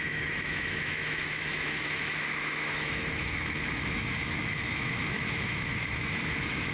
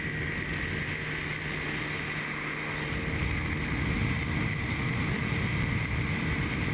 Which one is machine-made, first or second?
first